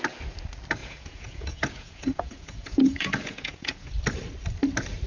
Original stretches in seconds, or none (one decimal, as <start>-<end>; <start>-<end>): 0.0-0.8; 3.9-5.1